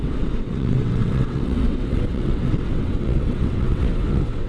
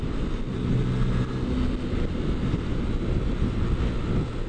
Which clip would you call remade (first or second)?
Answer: first